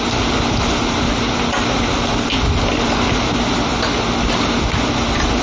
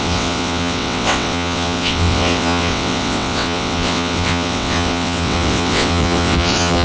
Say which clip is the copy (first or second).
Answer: second